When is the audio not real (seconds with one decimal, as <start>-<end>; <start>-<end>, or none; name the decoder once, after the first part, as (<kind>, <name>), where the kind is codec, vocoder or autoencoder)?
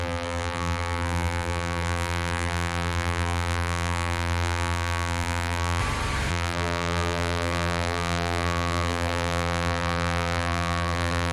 0.0-5.8 (vocoder, BigVGAN v2); 6.3-11.3